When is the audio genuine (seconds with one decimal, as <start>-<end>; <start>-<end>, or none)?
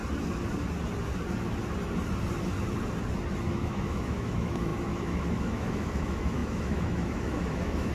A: 0.0-3.5